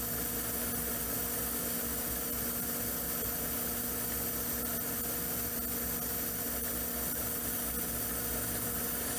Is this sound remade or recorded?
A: recorded